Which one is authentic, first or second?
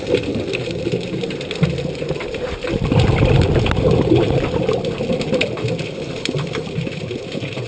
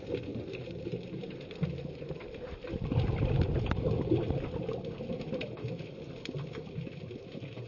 second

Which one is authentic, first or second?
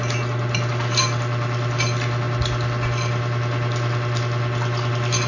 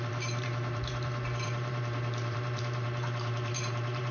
first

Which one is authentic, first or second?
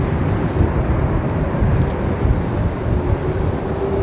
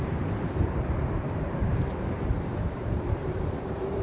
first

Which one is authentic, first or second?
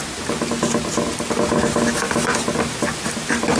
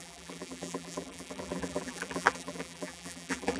first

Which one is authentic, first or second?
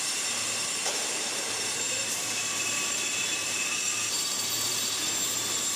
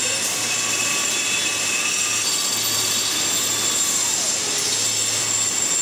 second